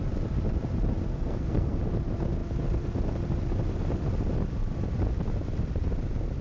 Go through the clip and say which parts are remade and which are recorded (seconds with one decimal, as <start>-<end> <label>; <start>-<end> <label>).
0.0-1.1 recorded; 1.1-1.8 remade; 1.8-6.4 recorded

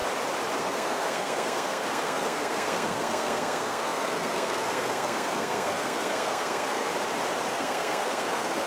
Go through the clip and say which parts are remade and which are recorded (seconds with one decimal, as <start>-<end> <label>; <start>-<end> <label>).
0.0-0.6 recorded; 0.6-6.9 remade; 6.9-7.5 recorded; 7.5-8.7 remade